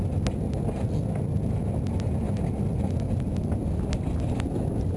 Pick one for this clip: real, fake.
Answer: real